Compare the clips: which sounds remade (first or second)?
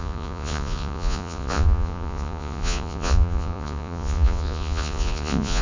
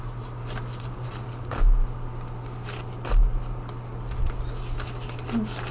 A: first